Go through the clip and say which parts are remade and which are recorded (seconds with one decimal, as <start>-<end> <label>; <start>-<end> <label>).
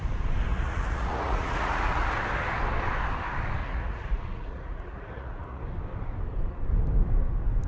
0.0-0.5 recorded; 0.5-2.1 remade; 2.1-3.6 recorded; 3.6-5.6 remade; 5.6-7.7 recorded